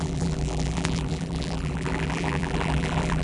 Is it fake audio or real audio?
fake